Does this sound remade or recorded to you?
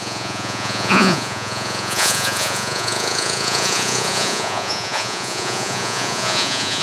remade